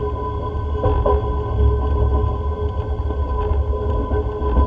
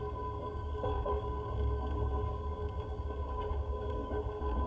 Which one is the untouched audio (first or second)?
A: first